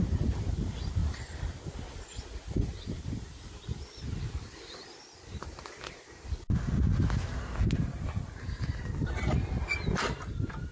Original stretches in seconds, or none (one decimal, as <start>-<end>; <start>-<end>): 0.0-10.7